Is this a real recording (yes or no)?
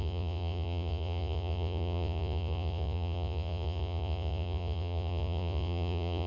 no